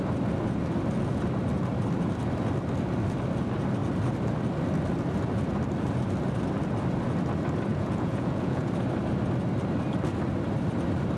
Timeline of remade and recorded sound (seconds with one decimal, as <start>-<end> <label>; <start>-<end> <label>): 0.0-7.7 recorded; 7.7-8.7 remade; 8.7-11.2 recorded